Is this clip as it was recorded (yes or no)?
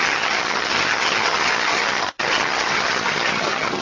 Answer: no